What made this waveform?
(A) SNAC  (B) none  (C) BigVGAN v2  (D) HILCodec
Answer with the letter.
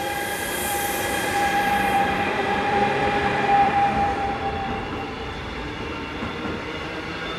C